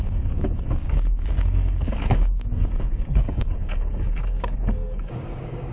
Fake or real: fake